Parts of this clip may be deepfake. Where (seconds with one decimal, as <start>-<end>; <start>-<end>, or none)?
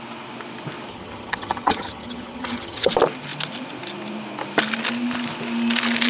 0.9-2.9